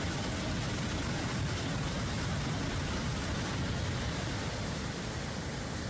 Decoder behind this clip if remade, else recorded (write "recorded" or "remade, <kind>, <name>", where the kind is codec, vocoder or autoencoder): recorded